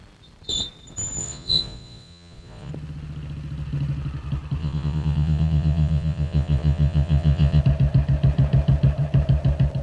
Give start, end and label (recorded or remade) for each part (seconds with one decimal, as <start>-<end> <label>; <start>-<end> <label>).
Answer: 0.0-1.2 recorded; 1.2-2.7 remade; 2.7-4.6 recorded; 4.6-7.6 remade; 7.6-9.8 recorded